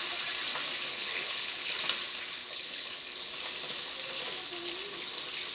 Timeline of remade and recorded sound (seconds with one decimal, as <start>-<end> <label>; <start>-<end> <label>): 0.0-0.9 recorded; 0.9-1.8 remade; 1.8-2.4 recorded; 2.4-3.3 remade; 3.3-5.5 recorded